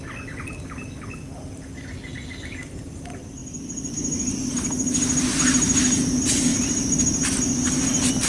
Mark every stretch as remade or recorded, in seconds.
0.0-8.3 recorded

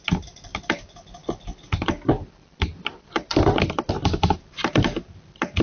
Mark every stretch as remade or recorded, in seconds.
0.0-0.5 recorded; 0.5-3.9 remade; 3.9-5.6 recorded

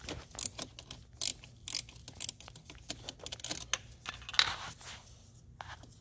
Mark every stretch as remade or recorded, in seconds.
0.0-6.0 recorded